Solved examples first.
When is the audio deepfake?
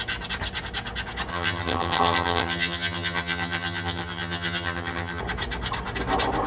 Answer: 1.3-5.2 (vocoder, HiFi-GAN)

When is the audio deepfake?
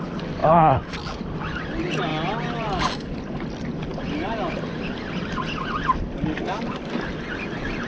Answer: none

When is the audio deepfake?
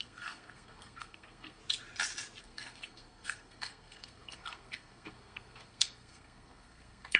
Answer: 0.0-1.6 (codec, SNAC); 2.4-7.2